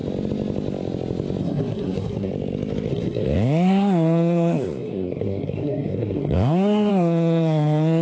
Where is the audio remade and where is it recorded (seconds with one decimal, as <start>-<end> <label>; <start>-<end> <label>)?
0.0-1.4 recorded; 1.4-2.3 remade; 2.3-2.9 recorded; 2.9-8.0 remade